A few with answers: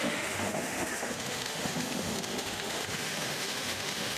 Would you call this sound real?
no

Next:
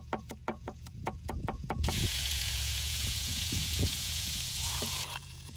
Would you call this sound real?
no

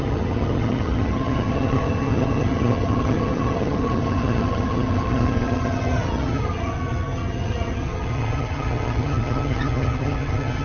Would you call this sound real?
no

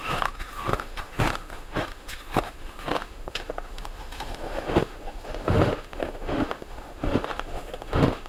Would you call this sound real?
no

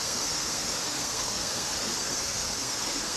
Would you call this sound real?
no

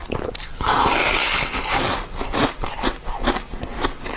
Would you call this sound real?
yes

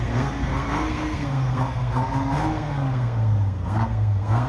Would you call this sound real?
no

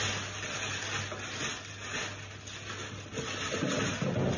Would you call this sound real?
yes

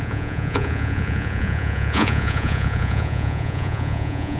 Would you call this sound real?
no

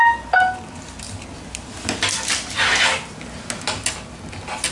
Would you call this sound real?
yes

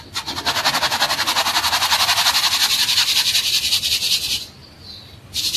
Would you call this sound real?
yes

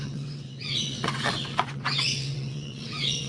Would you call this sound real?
no